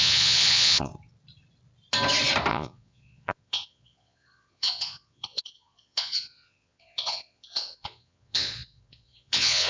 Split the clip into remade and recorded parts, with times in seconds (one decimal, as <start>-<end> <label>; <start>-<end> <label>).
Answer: 0.0-0.9 remade; 0.9-2.5 recorded; 2.5-9.7 remade